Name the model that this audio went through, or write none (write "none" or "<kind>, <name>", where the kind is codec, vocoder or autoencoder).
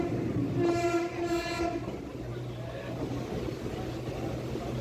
none